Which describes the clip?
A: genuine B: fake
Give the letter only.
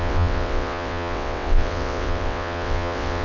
B